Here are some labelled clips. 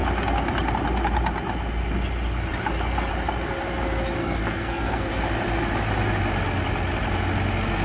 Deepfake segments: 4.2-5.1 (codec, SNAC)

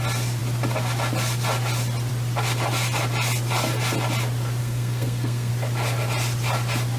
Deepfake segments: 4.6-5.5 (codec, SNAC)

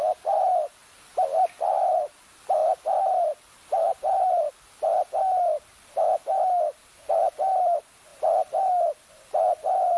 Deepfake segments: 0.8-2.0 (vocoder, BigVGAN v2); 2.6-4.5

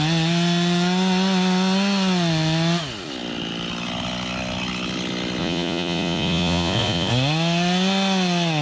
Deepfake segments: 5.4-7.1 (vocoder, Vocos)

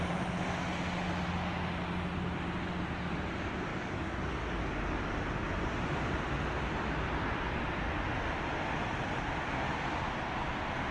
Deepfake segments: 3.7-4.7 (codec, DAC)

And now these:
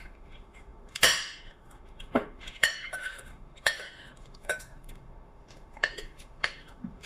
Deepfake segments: 0.0-7.1 (autoencoder, DAC-VAE)

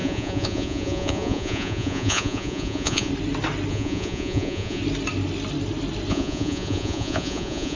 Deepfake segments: 0.0-3.1 (vocoder, Vocos); 3.7-4.8; 6.1-7.8